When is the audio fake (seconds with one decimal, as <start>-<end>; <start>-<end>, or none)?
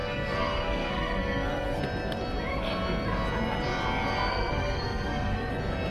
0.0-1.8; 4.3-5.5